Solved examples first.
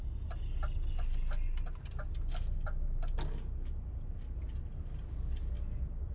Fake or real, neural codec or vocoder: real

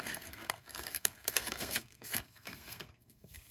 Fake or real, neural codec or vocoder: fake, codec, SNAC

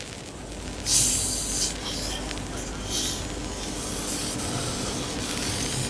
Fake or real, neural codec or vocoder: real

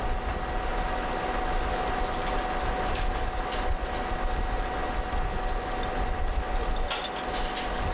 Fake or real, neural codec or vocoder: real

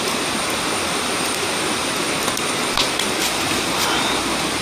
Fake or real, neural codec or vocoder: real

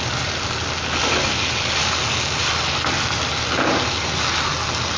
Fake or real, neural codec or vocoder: real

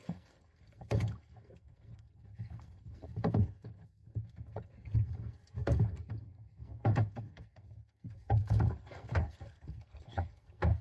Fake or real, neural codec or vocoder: fake, codec, SNAC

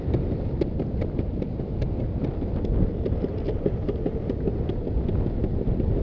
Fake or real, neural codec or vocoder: real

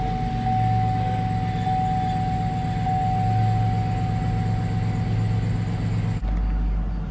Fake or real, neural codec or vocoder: real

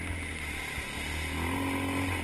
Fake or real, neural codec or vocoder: real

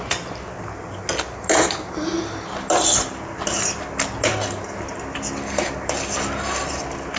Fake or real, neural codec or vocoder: real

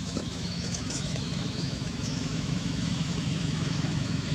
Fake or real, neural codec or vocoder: fake, autoencoder, DAC-VAE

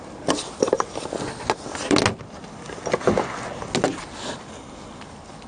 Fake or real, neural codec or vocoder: real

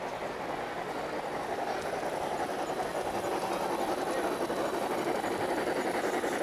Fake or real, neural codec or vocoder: real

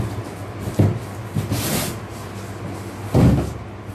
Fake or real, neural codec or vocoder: real